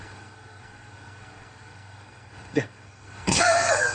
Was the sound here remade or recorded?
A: remade